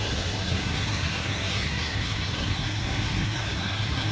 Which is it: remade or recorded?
remade